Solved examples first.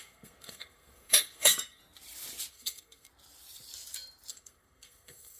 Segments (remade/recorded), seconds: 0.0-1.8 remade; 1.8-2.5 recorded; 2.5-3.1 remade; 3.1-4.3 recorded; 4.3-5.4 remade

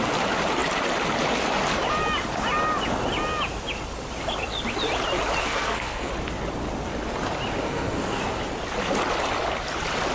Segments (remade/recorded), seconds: 0.0-5.4 recorded; 5.4-6.1 remade; 6.1-7.6 recorded; 7.6-8.2 remade; 8.2-10.1 recorded

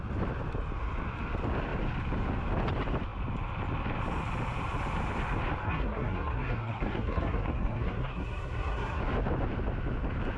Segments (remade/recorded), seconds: 0.0-5.6 recorded; 5.6-9.0 remade; 9.0-10.4 recorded

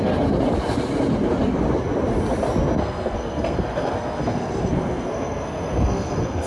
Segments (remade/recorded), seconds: 0.0-2.8 recorded; 2.8-6.5 remade

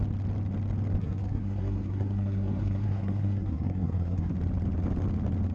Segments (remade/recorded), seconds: 0.0-1.0 recorded; 1.0-4.3 remade; 4.3-5.5 recorded